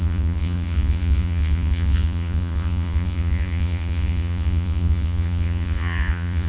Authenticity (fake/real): fake